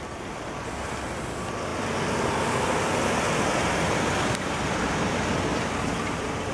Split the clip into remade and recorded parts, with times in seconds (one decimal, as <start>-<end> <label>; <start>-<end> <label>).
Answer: 0.0-6.5 recorded